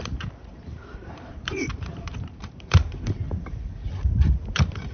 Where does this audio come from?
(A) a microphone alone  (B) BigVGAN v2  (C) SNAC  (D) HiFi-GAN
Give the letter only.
B